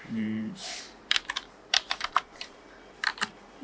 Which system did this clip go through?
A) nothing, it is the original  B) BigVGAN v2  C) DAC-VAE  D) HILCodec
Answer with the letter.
B